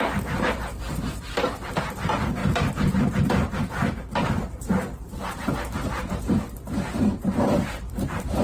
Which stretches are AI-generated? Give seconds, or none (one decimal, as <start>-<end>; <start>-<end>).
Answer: 0.0-8.4

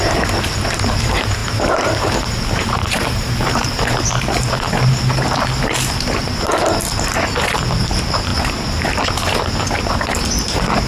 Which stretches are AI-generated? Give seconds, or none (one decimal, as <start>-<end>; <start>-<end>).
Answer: 1.4-3.8

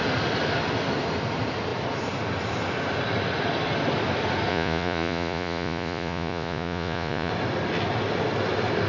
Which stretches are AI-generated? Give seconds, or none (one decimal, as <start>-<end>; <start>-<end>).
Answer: 4.5-7.3

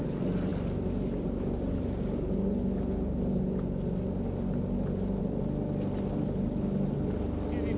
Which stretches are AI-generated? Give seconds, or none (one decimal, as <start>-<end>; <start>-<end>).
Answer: none